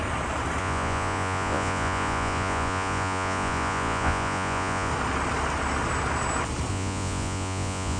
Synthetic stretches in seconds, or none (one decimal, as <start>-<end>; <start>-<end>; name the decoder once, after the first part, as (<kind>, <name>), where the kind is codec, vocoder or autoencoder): 0.6-4.9 (vocoder, Vocos); 6.7-8.0